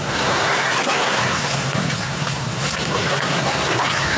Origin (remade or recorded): remade